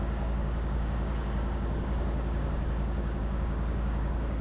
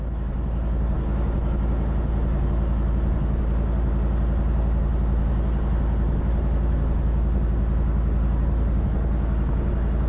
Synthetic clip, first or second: first